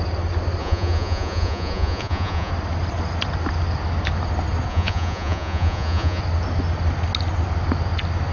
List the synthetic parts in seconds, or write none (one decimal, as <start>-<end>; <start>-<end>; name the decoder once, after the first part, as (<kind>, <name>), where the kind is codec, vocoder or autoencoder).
0.6-2.5 (vocoder, Vocos); 4.7-6.2